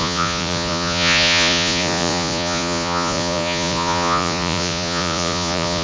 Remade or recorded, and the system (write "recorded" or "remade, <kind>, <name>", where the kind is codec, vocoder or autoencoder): remade, vocoder, Vocos